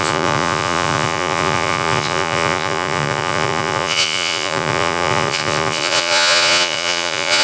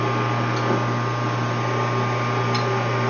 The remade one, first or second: first